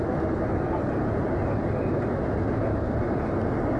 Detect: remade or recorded recorded